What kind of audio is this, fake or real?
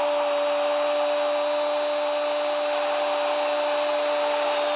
real